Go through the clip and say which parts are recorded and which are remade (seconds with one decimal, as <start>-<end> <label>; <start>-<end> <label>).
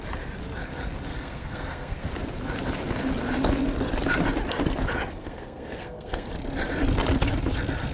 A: 0.0-1.1 recorded; 1.1-2.1 remade; 2.1-5.2 recorded; 5.2-6.3 remade; 6.3-7.9 recorded